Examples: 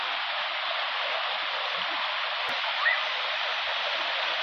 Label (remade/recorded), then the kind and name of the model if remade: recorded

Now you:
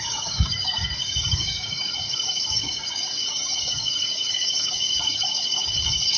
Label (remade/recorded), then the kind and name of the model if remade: remade, codec, DAC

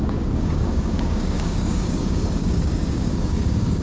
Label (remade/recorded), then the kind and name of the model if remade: remade, codec, DAC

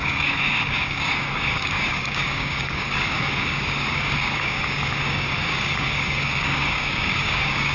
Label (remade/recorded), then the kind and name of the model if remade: remade, codec, DAC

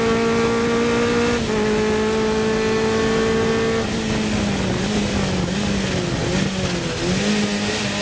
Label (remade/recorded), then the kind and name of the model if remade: recorded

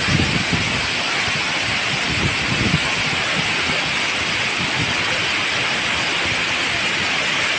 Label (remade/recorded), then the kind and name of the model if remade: recorded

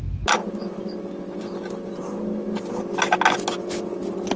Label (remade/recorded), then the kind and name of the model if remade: recorded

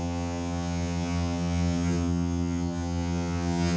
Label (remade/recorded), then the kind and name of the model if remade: remade, vocoder, HiFi-GAN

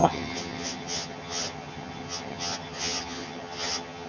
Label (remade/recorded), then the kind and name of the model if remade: remade, vocoder, HiFi-GAN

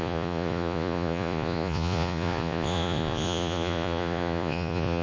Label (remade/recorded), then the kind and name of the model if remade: remade, vocoder, Vocos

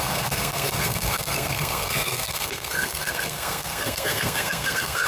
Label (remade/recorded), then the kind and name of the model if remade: remade, codec, SNAC